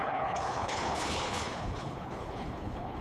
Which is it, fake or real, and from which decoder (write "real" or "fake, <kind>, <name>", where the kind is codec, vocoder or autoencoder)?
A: fake, codec, HILCodec